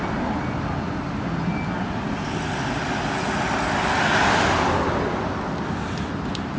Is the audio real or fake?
real